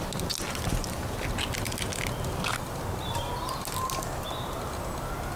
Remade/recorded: recorded